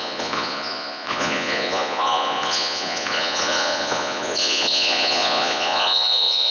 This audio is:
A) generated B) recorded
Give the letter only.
A